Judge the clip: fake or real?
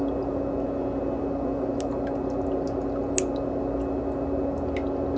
real